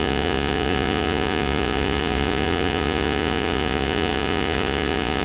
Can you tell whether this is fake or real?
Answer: fake